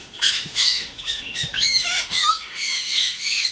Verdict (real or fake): fake